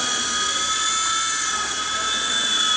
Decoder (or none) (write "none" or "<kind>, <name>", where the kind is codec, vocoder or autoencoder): none